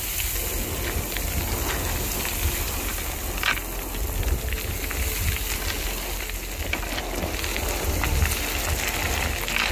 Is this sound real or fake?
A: real